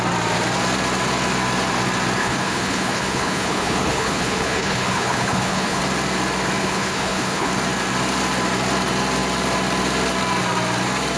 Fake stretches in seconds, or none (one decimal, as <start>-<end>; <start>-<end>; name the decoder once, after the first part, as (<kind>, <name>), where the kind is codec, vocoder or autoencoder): 2.2-5.8 (codec, HILCodec); 6.6-7.5